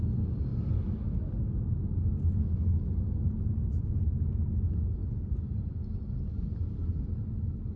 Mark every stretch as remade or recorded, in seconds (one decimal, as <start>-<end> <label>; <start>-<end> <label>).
0.0-7.8 recorded